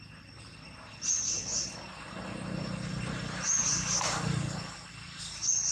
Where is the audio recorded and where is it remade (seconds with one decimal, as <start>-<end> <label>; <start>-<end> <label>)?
0.0-5.7 recorded